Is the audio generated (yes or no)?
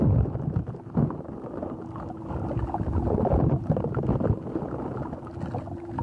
no